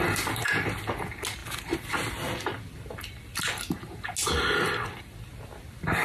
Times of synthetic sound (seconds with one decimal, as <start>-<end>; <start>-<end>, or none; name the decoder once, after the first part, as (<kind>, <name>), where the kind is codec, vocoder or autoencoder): none